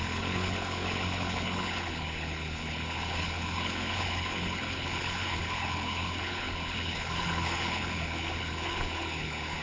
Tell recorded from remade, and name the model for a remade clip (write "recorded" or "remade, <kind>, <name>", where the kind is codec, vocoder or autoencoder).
remade, codec, HILCodec